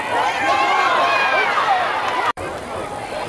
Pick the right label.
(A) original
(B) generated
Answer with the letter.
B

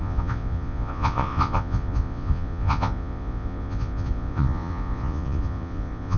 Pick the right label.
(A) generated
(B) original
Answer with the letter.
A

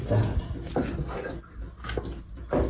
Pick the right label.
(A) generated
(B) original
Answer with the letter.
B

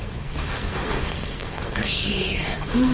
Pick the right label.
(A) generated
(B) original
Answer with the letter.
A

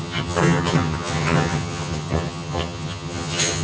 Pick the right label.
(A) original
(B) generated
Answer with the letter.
B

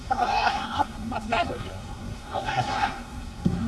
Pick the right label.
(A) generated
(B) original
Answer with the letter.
A